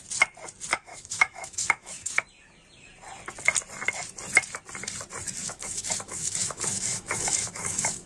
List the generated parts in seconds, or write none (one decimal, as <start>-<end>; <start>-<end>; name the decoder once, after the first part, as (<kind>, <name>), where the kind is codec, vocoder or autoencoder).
0.7-2.2 (autoencoder, DAC-VAE); 5.4-8.1